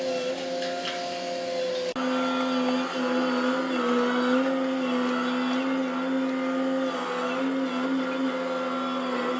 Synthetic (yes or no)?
no